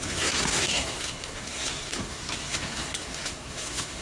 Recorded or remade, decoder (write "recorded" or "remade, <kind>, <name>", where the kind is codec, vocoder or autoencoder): remade, codec, SNAC